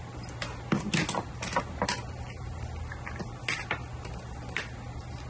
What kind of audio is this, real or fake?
real